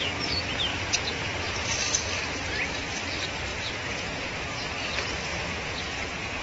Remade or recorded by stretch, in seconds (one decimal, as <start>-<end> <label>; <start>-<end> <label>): 0.0-0.7 recorded; 0.7-1.5 remade; 1.5-3.5 recorded; 3.5-4.4 remade; 4.4-5.3 recorded; 5.3-6.4 remade